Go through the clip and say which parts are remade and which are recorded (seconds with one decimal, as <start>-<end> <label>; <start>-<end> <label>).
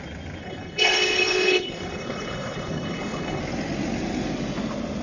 0.0-0.4 recorded; 0.4-3.4 remade; 3.4-5.0 recorded